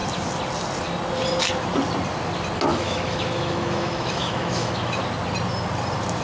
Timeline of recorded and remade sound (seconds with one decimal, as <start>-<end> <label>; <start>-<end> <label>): 0.0-2.7 recorded; 2.7-5.0 remade; 5.0-6.2 recorded